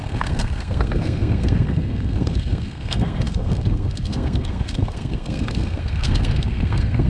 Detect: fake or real fake